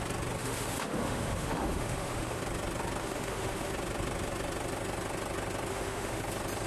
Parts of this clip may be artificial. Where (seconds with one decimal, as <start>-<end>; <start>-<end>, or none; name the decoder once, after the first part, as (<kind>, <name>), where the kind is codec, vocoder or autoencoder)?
0.4-2.4 (autoencoder, DAC-VAE); 3.0-3.7; 5.7-6.2